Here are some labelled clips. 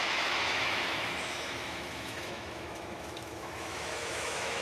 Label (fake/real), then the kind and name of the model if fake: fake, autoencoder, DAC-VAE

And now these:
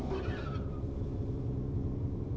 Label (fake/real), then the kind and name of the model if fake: fake, vocoder, BigVGAN v2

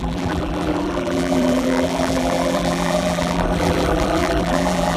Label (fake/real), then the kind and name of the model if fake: fake, vocoder, BigVGAN v2